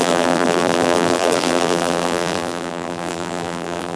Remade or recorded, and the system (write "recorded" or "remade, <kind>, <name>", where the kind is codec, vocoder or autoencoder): remade, vocoder, BigVGAN v2